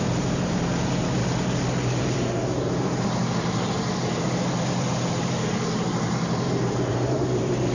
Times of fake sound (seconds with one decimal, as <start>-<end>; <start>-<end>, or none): 0.0-1.2; 2.0-7.7